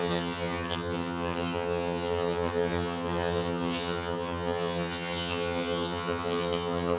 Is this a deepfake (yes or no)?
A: yes